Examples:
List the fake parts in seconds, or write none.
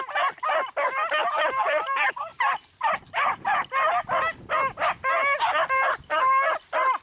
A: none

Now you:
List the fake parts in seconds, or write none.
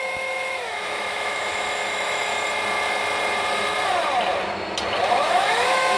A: 0.0-2.3; 5.1-6.0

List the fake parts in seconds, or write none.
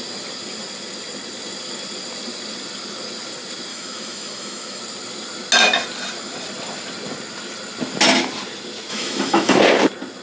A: 3.7-4.8; 8.9-9.6